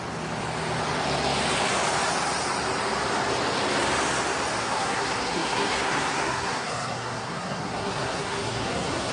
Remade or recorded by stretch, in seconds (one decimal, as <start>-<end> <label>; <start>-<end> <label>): 0.0-4.6 recorded; 4.6-9.1 remade